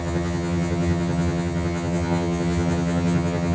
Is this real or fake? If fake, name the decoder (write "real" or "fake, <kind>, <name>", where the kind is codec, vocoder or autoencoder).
fake, vocoder, HiFi-GAN